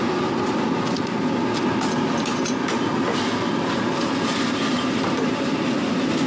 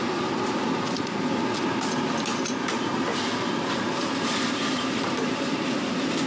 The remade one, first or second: second